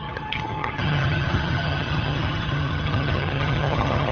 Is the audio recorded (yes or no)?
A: no